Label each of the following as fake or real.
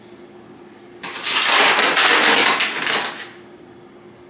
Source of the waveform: real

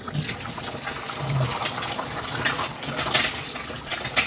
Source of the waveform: real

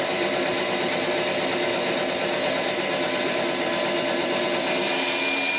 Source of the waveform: real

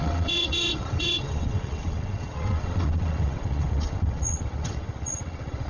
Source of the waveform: fake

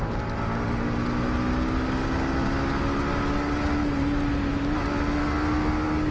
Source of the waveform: real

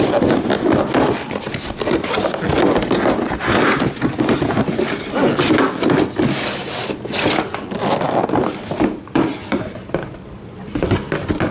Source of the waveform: real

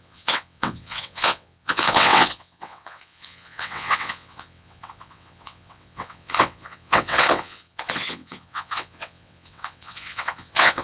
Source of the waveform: fake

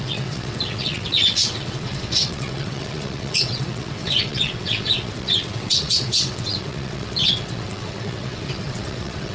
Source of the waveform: fake